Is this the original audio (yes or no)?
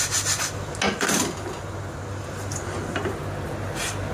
yes